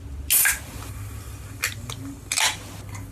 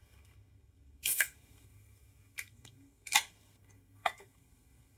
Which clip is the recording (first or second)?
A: first